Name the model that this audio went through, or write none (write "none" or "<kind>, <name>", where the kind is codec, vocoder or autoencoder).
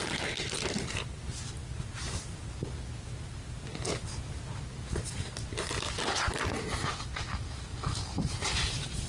none